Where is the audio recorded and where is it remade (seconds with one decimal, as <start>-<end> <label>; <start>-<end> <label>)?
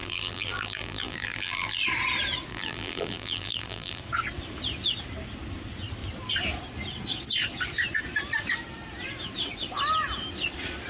0.0-1.8 remade; 1.8-2.5 recorded; 2.5-4.0 remade; 4.0-10.9 recorded